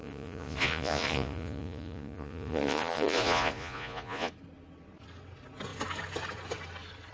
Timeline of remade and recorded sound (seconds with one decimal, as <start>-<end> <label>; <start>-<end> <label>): 0.0-4.3 remade; 4.3-7.1 recorded